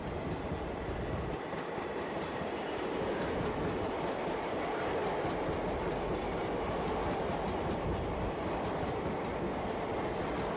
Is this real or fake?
fake